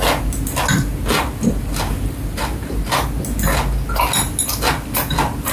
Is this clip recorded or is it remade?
recorded